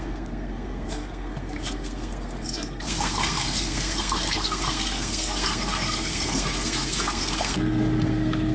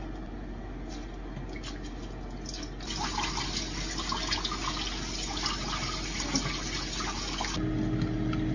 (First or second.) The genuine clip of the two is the second